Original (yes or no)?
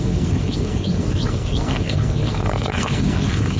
no